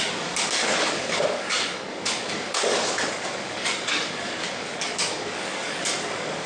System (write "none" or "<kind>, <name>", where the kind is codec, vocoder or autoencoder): codec, DAC